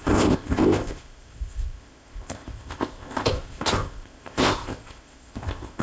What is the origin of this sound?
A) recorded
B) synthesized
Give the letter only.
B